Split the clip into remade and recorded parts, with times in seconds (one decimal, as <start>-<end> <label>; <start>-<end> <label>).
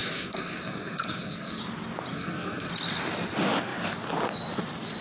0.0-1.6 remade; 1.6-2.1 recorded; 2.1-2.7 remade; 2.7-5.0 recorded